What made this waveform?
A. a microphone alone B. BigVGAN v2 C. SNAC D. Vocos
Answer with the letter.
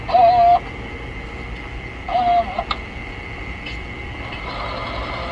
A